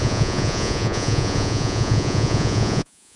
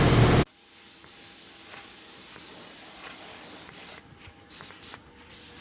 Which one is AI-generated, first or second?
first